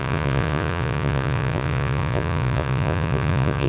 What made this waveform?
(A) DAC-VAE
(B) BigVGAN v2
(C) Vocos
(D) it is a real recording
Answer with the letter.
C